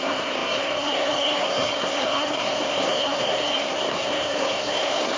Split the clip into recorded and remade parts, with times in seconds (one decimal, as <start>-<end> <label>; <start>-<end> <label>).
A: 0.0-5.2 remade